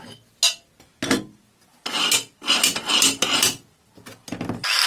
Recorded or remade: recorded